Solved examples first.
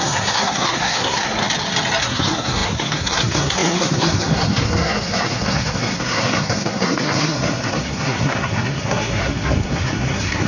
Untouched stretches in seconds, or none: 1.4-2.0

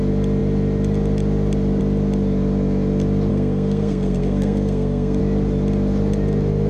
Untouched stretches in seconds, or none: 0.0-3.3; 5.2-6.7

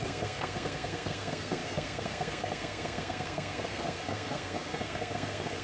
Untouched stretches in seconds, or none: none

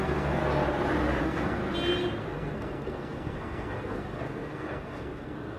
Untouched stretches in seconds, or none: 0.4-1.2; 1.6-2.2

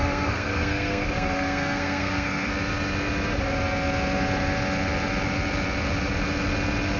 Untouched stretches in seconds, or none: 2.5-7.0